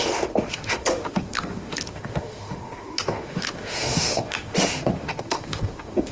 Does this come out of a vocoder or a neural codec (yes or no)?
yes